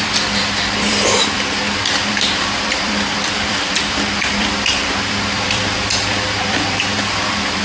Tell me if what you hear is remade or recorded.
remade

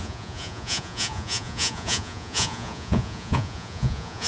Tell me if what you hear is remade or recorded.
remade